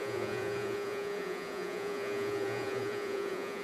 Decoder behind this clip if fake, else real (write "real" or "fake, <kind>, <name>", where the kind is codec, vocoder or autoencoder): fake, vocoder, Vocos